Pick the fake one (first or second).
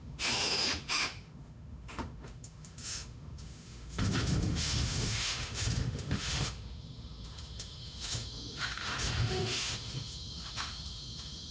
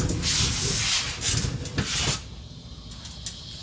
first